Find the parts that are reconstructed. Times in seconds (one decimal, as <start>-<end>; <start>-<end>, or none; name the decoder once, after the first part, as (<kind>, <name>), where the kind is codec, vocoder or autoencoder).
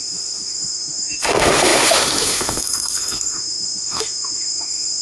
0.0-5.0 (autoencoder, DAC-VAE)